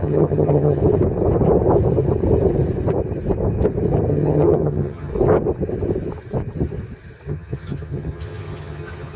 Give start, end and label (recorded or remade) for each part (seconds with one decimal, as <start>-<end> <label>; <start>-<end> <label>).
0.0-0.8 remade; 0.8-4.1 recorded; 4.1-5.1 remade; 5.1-7.3 recorded; 7.3-9.2 remade